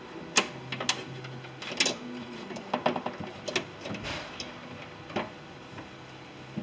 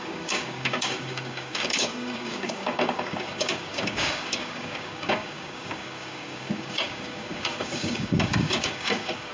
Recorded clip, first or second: first